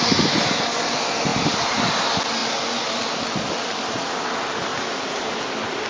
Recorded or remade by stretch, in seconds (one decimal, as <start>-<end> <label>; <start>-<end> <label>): 0.0-1.3 recorded; 1.3-2.0 remade; 2.0-4.7 recorded; 4.7-5.5 remade; 5.5-5.9 recorded